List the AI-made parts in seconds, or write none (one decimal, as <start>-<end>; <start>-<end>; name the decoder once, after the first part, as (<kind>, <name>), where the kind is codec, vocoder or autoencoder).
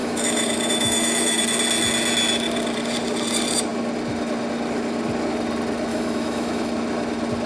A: 0.0-1.4 (autoencoder, DAC-VAE); 5.9-6.7